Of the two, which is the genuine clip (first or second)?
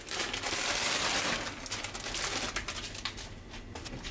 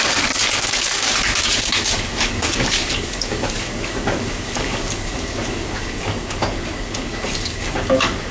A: first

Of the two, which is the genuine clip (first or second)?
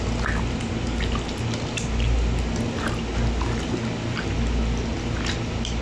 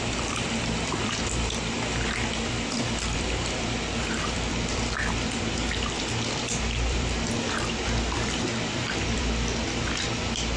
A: first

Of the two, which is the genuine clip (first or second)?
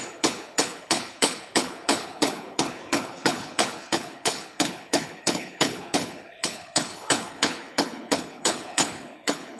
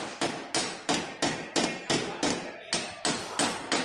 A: second